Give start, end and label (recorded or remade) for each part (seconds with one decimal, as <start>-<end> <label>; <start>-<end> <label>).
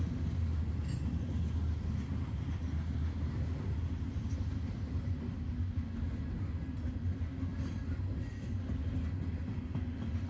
0.0-10.3 recorded